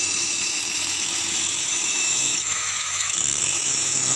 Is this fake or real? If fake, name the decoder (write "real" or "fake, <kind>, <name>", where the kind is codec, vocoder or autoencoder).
fake, autoencoder, DAC-VAE